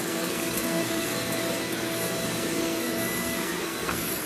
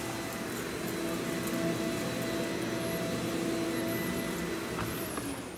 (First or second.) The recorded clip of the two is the second